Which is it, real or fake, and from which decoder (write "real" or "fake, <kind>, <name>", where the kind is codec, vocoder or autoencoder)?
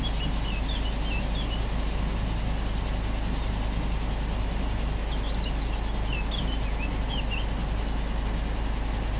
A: real